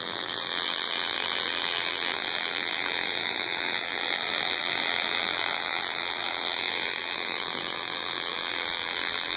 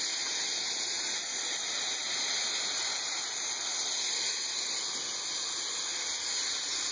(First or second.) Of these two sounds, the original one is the second